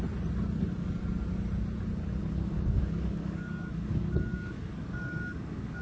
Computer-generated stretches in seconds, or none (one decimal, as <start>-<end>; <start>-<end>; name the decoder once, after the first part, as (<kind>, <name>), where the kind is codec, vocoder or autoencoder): 2.2-5.8 (codec, DAC)